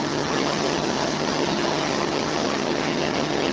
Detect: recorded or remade remade